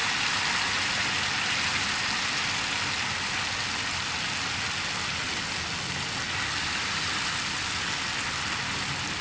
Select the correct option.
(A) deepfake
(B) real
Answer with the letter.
B